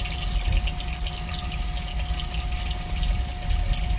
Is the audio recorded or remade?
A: recorded